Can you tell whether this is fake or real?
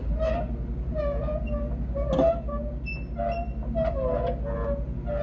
real